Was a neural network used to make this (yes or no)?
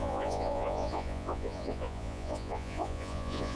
yes